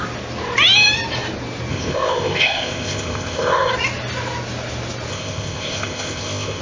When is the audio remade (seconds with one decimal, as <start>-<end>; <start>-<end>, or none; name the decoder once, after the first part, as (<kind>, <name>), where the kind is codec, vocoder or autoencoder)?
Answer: 1.7-3.7 (codec, ZipCodec); 5.1-6.6

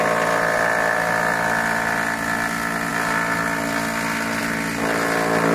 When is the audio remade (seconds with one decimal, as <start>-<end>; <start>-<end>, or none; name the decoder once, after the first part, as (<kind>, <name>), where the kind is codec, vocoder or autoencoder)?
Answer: none

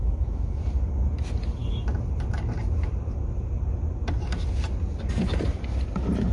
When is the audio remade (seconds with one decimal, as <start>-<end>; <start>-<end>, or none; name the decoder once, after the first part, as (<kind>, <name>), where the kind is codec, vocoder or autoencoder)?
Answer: 0.0-0.6 (autoencoder, DAC-VAE)

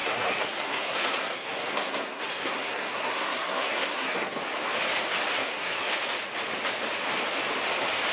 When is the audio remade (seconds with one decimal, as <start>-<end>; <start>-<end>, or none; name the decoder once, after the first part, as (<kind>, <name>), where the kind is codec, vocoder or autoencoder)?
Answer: 0.0-4.4 (codec, SNAC); 5.3-5.9